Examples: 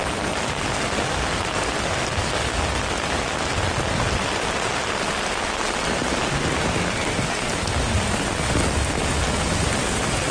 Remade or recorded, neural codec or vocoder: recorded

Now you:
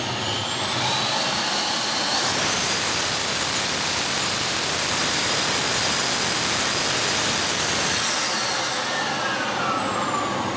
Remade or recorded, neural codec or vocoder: recorded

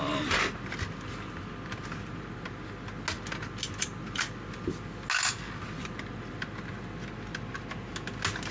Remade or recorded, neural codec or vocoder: recorded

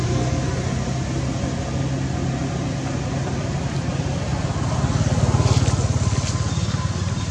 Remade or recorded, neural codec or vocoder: recorded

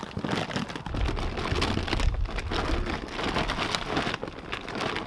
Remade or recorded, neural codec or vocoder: recorded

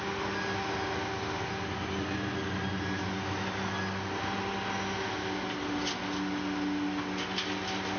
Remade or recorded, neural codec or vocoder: recorded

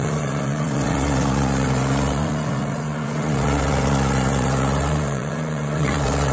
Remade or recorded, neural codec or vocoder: remade, vocoder, Vocos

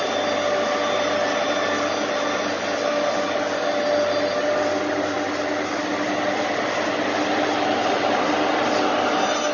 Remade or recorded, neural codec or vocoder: recorded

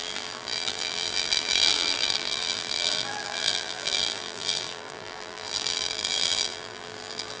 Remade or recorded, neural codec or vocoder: remade, vocoder, BigVGAN v2